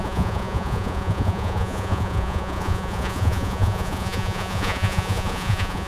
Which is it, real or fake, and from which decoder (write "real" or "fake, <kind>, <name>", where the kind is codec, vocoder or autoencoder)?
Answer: fake, vocoder, Vocos